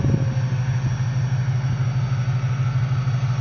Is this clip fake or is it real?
real